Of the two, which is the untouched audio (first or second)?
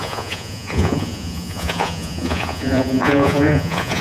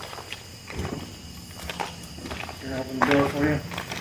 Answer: second